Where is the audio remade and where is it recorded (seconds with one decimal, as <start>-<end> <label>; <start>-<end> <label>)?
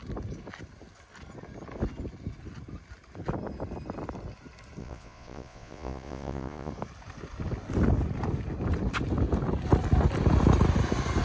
0.0-4.8 recorded; 4.8-6.7 remade; 6.7-11.2 recorded